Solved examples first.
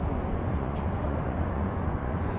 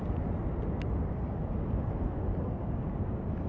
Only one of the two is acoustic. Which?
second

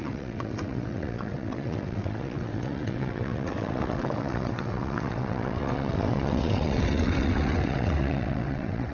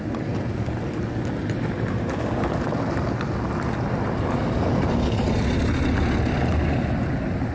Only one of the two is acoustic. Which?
second